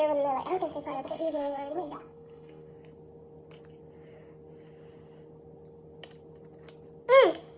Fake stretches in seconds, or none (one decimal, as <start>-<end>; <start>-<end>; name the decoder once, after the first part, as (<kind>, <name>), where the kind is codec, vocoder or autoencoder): 0.9-2.7 (codec, SNAC)